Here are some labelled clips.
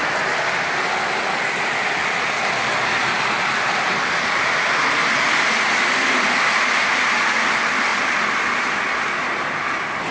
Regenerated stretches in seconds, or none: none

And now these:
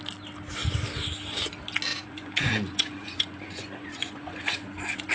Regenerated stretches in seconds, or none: 1.9-5.1 (vocoder, Vocos)

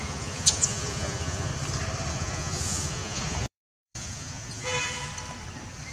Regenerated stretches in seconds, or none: 0.0-1.5 (vocoder, Vocos); 2.1-5.1

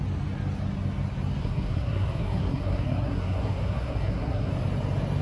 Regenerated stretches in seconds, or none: 1.4-4.5 (codec, SNAC)

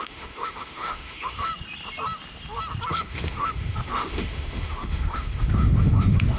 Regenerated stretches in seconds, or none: 0.0-1.5 (autoencoder, DAC-VAE); 2.9-6.4